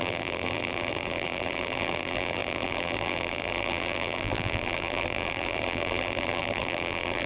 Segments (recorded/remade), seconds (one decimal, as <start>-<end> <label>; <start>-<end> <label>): 0.0-7.3 remade

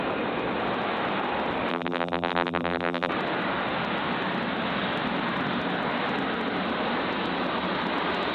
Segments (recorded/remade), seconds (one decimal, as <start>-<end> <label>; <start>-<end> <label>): 0.0-1.7 recorded; 1.7-3.1 remade; 3.1-8.3 recorded

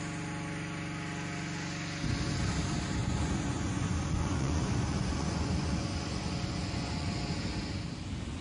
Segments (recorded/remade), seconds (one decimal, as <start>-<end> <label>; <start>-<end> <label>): 0.0-3.0 recorded; 3.0-7.1 remade; 7.1-8.4 recorded

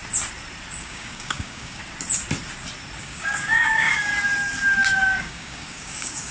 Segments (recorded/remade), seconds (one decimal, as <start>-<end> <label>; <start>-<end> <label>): 0.0-0.8 recorded; 0.8-1.8 remade; 1.8-3.0 recorded; 3.0-4.1 remade; 4.1-5.2 recorded; 5.2-6.3 remade

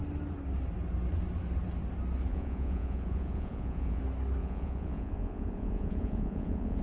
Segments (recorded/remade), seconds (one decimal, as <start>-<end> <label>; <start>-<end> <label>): 0.0-2.3 recorded; 2.3-4.0 remade; 4.0-4.4 recorded; 4.4-6.8 remade